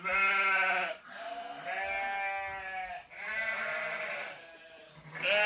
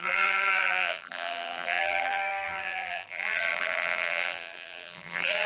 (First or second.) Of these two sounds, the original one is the first